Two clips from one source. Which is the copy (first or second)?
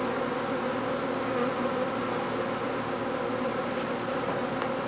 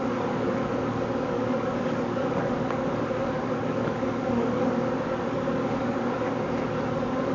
second